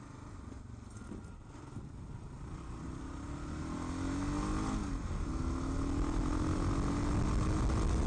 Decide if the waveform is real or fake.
real